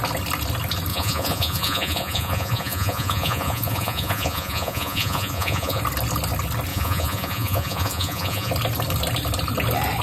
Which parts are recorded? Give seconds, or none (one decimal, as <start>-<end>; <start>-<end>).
0.0-0.9; 5.8-6.7; 8.5-10.0

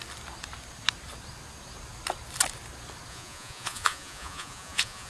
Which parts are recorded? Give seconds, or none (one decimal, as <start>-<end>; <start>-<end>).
0.0-3.1

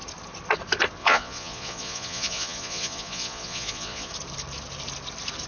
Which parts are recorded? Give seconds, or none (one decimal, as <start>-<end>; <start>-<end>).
0.0-1.0; 4.1-5.5

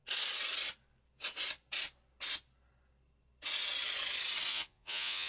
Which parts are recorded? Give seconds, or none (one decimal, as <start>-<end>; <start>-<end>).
0.0-4.5

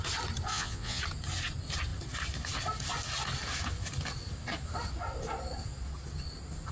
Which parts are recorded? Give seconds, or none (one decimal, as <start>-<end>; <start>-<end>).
0.0-0.5; 1.0-6.7

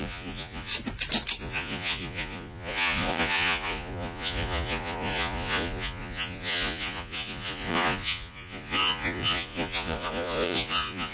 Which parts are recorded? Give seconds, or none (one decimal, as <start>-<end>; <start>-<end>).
0.7-1.4

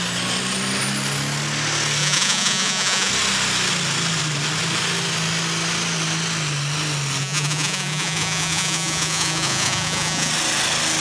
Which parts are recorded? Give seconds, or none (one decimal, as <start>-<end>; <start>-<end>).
0.0-2.0; 3.1-7.2; 10.3-11.0